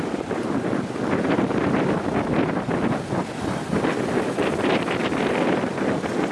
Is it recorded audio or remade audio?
recorded